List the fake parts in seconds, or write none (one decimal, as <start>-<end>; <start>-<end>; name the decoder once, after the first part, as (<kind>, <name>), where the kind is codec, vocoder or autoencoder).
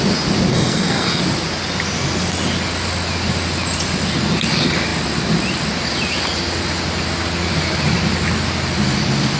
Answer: 0.5-1.2 (codec, SNAC)